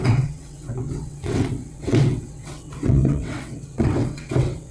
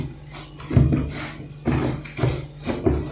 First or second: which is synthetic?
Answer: first